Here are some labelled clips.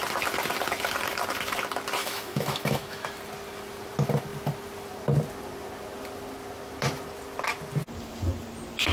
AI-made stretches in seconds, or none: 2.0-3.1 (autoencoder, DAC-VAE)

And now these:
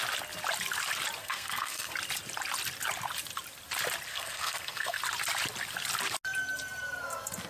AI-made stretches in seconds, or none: 1.2-1.9 (codec, SNAC); 4.1-5.0